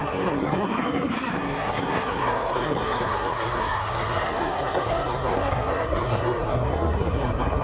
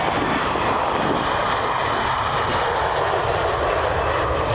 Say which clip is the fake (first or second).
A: first